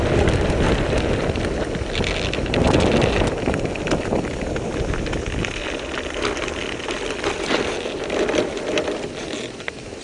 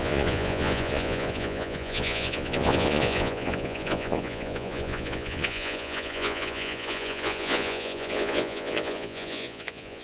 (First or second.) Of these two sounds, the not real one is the second